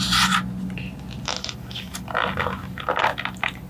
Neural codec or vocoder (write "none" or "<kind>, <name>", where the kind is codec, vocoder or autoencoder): none